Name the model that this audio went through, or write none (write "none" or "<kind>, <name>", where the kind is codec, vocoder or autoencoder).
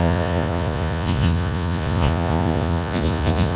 vocoder, Vocos